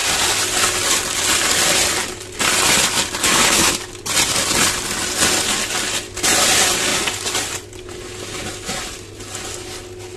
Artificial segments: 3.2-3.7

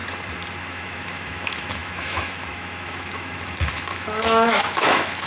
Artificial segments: 0.6-5.3

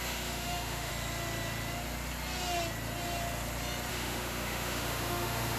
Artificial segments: 0.0-0.9; 3.9-5.6

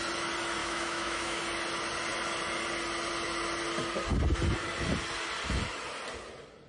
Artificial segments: 0.6-1.4

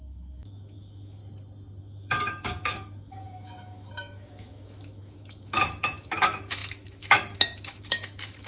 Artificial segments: 0.0-1.2; 1.8-8.5